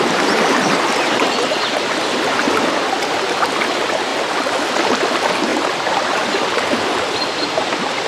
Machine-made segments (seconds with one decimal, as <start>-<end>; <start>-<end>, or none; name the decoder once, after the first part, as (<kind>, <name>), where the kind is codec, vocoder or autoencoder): none